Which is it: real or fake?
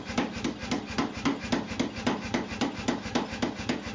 real